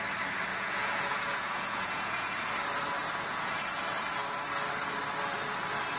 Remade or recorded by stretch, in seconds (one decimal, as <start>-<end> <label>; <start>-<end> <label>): 0.0-0.5 recorded; 0.5-2.5 remade; 2.5-3.0 recorded; 3.0-3.8 remade; 3.8-6.0 recorded